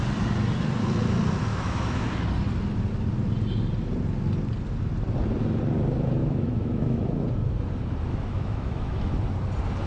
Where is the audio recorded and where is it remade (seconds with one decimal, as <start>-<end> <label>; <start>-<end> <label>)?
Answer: 0.0-1.5 recorded; 1.5-2.1 remade; 2.1-6.2 recorded; 6.2-7.1 remade; 7.1-8.1 recorded; 8.1-9.1 remade; 9.1-9.9 recorded